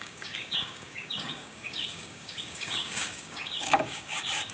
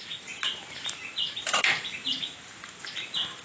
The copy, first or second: first